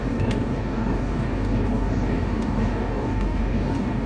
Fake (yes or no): yes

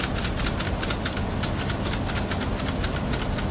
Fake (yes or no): no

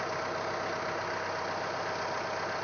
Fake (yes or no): no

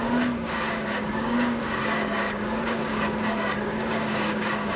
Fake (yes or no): yes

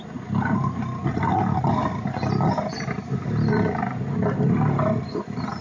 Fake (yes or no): no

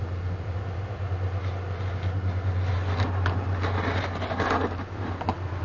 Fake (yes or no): no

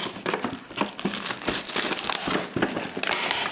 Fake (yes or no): no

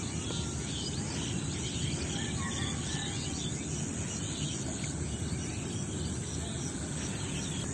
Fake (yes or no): no